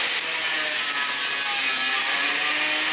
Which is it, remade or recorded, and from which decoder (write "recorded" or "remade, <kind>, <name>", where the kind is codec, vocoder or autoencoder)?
recorded